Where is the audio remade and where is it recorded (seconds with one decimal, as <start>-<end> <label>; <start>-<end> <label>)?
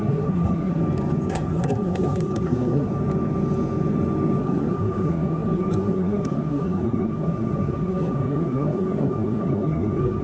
0.0-0.8 remade; 0.8-1.3 recorded; 1.3-2.9 remade; 2.9-4.4 recorded; 4.4-10.2 remade